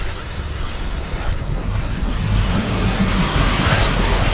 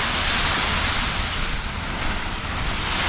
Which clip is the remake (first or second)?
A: first